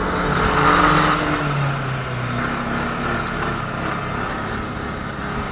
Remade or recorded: recorded